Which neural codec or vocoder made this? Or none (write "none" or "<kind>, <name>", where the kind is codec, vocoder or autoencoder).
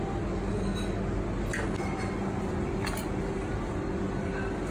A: none